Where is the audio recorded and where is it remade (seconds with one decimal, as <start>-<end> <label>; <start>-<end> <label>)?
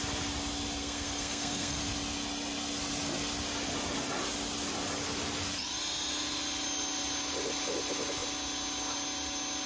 0.0-0.8 recorded; 0.8-1.8 remade; 1.8-9.7 recorded